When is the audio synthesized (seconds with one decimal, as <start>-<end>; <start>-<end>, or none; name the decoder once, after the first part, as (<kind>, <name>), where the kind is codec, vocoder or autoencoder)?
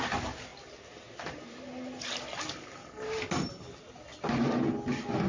none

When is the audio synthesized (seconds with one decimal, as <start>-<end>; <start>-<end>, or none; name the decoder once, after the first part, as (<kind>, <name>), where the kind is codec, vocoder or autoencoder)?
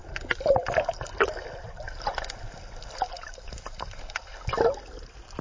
none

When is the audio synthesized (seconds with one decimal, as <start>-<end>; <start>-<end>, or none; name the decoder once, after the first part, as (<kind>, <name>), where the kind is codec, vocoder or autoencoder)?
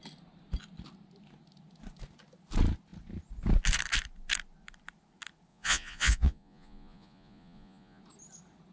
5.5-8.0 (vocoder, Vocos)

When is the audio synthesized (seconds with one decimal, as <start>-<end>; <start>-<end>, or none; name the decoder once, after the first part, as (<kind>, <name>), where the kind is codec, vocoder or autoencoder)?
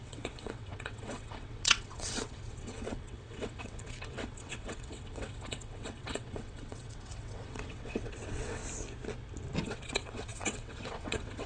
0.0-8.6 (vocoder, WaveNeXt); 9.6-11.5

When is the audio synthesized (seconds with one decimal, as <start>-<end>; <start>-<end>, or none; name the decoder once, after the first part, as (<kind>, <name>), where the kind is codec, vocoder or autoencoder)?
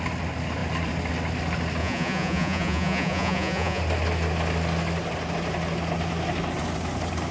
1.8-3.8 (vocoder, Vocos)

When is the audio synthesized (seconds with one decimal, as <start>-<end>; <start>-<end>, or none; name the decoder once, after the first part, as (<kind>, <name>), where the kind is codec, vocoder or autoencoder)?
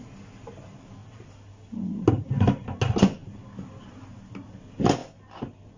none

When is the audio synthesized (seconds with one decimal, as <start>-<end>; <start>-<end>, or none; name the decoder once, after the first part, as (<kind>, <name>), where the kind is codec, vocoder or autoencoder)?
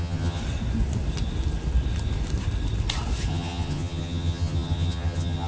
0.0-0.4 (vocoder, HiFi-GAN); 3.3-5.5